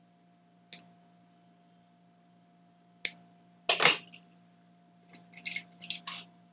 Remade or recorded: recorded